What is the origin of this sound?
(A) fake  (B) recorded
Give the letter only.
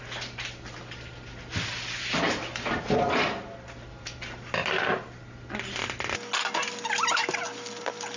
B